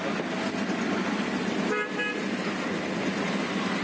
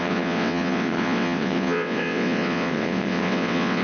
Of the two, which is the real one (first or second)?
first